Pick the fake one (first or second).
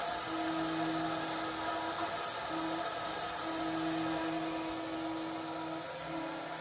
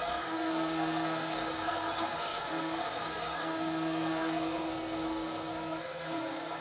second